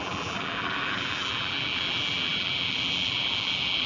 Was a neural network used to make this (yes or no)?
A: yes